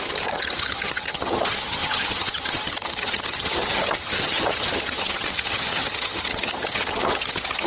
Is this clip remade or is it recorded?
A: remade